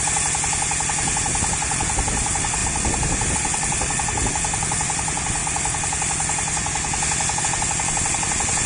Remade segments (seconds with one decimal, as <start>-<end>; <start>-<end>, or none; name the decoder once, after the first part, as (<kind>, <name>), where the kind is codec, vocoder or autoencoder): none